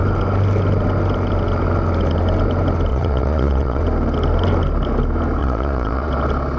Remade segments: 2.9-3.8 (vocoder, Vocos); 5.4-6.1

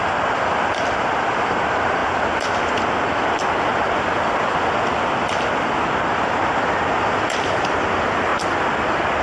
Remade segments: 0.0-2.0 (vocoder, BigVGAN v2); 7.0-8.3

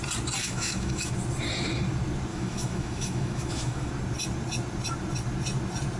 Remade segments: 0.4-1.1 (autoencoder, DAC-VAE); 2.3-3.9

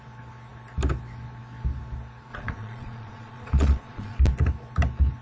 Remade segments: 2.3-4.2 (vocoder, Vocos)

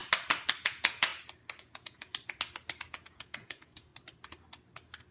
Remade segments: 0.6-1.1 (vocoder, Vocos); 1.6-2.1; 2.9-3.9

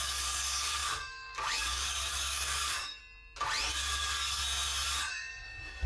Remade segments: 0.0-3.0 (codec, DAC); 3.7-4.4; 5.1-5.9

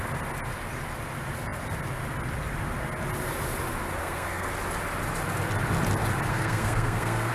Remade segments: 4.0-4.5 (codec, SNAC); 6.3-7.3

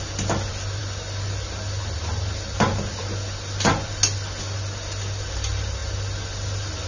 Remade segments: none